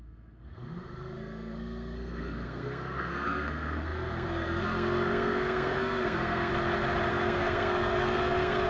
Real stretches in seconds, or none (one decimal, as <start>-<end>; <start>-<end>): 6.5-7.1